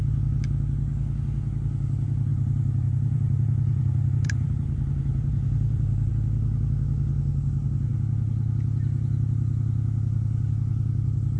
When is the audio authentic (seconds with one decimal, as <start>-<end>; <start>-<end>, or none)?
0.0-2.3; 6.1-11.4